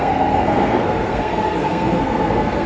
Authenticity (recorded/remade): remade